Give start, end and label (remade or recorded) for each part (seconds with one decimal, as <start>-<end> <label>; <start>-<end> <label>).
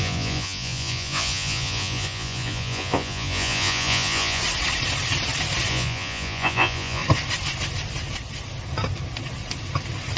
0.0-4.4 remade; 4.4-5.7 recorded; 5.7-7.0 remade; 7.0-10.2 recorded